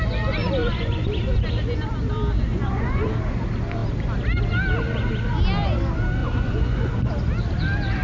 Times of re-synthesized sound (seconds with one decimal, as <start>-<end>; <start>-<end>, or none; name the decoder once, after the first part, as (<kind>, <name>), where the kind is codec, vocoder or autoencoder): 0.6-1.1 (vocoder, Vocos); 2.5-3.1; 6.2-7.1